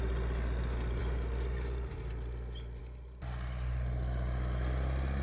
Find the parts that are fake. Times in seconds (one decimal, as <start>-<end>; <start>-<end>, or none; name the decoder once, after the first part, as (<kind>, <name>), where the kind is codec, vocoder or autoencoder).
none